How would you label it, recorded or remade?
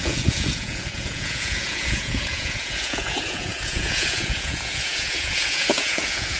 remade